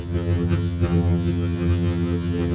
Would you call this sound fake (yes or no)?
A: yes